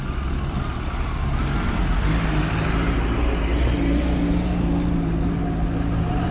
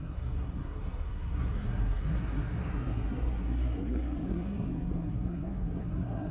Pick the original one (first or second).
first